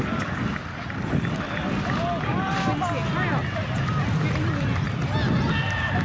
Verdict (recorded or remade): recorded